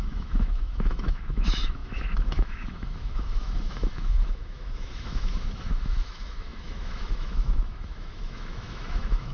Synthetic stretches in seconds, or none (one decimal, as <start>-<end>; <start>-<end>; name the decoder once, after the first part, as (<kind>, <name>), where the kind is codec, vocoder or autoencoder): 0.0-9.3 (autoencoder, DAC-VAE)